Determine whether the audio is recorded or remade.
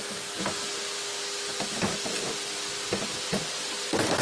recorded